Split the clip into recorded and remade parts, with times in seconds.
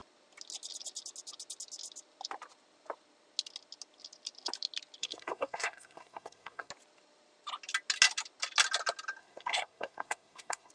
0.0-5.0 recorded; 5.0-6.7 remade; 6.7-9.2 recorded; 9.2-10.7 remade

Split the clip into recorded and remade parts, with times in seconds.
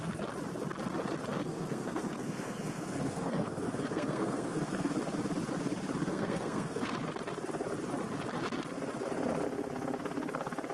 0.0-1.3 recorded; 1.3-4.9 remade; 4.9-6.0 recorded; 6.0-6.9 remade; 6.9-10.7 recorded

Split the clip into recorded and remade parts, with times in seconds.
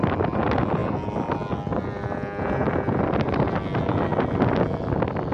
0.0-5.3 recorded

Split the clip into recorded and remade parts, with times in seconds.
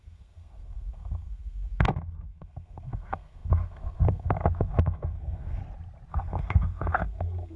0.0-5.6 remade; 5.6-6.1 recorded; 6.1-7.6 remade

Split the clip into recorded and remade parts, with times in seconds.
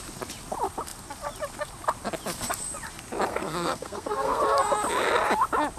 0.0-3.3 recorded; 3.3-4.4 remade; 4.4-5.8 recorded